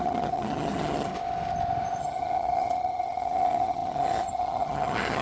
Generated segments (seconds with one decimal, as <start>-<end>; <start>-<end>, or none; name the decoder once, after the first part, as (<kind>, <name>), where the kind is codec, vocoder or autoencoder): 0.0-1.1 (vocoder, HiFi-GAN); 2.0-5.2